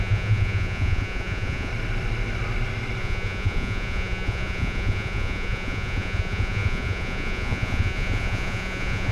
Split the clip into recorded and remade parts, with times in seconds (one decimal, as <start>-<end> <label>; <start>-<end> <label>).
0.0-1.7 remade; 1.7-3.0 recorded; 3.0-9.1 remade